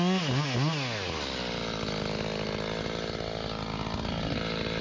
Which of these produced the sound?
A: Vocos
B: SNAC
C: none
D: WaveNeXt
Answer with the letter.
C